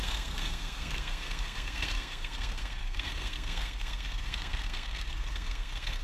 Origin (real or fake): fake